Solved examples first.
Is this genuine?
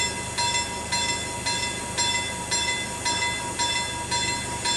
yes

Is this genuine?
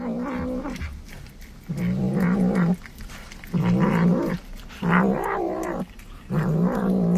yes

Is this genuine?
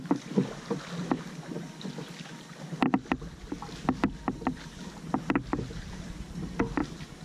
yes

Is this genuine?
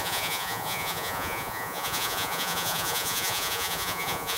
no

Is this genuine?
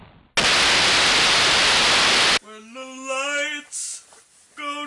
yes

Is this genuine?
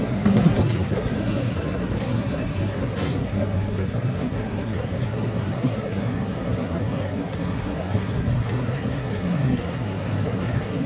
no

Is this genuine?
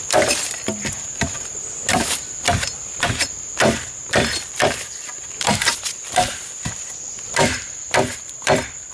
no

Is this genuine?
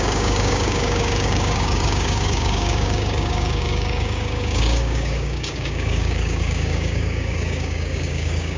no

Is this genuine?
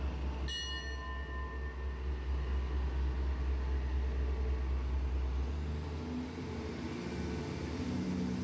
yes